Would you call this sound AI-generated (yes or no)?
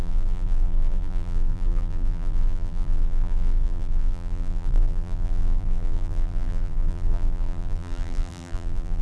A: yes